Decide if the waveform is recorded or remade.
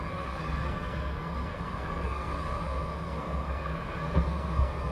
remade